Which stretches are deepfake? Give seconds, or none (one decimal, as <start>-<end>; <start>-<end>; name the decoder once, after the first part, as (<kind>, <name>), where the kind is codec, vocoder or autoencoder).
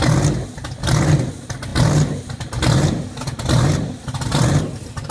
none